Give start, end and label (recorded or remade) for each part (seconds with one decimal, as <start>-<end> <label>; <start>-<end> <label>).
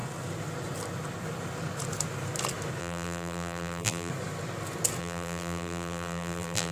0.0-2.8 recorded; 2.8-4.1 remade; 4.1-5.0 recorded; 5.0-6.7 remade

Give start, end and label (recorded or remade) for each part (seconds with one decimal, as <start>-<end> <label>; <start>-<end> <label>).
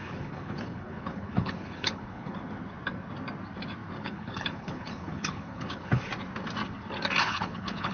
0.0-2.4 remade; 2.4-4.0 recorded; 4.0-6.1 remade; 6.1-7.2 recorded; 7.2-7.9 remade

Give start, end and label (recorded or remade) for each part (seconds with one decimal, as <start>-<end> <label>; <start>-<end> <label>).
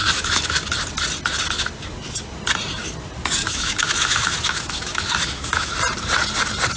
0.0-0.5 remade; 0.5-3.4 recorded; 3.4-5.7 remade; 5.7-6.8 recorded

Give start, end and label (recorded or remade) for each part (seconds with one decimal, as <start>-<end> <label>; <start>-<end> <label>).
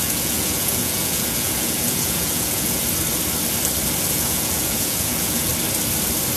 0.0-2.8 remade; 2.8-4.1 recorded; 4.1-5.5 remade; 5.5-6.4 recorded